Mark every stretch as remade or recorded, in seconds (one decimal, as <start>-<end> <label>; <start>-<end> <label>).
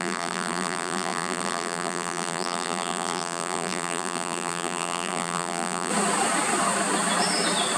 0.0-5.9 remade; 5.9-7.8 recorded